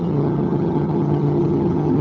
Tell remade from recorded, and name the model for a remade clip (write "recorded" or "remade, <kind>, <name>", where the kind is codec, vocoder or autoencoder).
remade, vocoder, HiFi-GAN